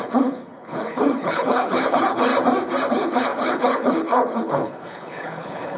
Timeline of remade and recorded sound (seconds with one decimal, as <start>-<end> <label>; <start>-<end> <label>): 0.0-2.3 remade; 2.3-2.9 recorded; 2.9-5.8 remade

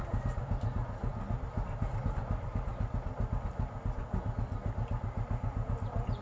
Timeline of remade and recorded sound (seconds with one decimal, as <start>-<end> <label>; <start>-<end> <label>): 0.0-6.2 recorded

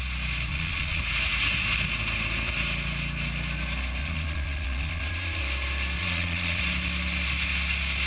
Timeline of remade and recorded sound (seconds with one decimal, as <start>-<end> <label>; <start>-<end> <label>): 0.0-0.5 recorded; 0.5-1.0 remade; 1.0-4.0 recorded; 4.0-5.4 remade; 5.4-6.0 recorded; 6.0-6.6 remade; 6.6-8.1 recorded

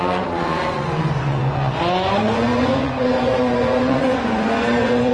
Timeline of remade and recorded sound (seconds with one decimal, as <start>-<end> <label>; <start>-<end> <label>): 0.0-5.1 remade

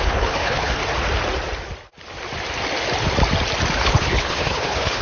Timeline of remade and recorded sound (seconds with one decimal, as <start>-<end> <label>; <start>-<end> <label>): 0.0-0.8 remade; 0.8-3.8 recorded; 3.8-5.0 remade

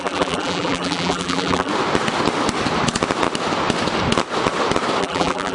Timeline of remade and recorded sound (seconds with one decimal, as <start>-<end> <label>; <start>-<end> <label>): 0.0-1.7 remade; 1.7-5.0 recorded; 5.0-5.5 remade